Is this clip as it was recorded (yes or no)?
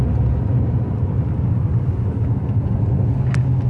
yes